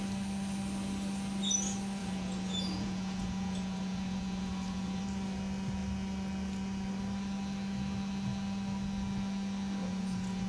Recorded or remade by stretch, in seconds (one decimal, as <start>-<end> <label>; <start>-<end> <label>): 0.0-2.0 recorded; 2.0-5.0 remade; 5.0-9.8 recorded; 9.8-10.5 remade